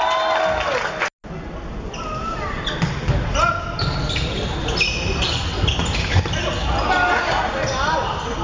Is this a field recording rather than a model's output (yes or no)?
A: yes